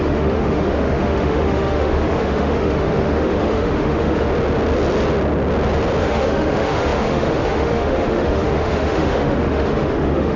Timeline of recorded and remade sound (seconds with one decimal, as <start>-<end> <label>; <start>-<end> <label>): 0.0-4.3 remade; 4.3-6.0 recorded; 6.0-10.4 remade